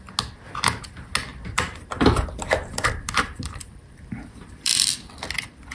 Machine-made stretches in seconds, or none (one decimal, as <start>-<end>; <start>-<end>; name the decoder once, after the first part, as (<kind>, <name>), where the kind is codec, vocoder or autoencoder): 1.3-4.7 (vocoder, BigVGAN v2)